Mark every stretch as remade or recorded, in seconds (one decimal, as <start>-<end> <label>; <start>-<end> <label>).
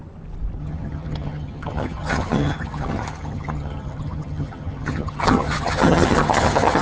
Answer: 0.0-0.6 recorded; 0.6-6.8 remade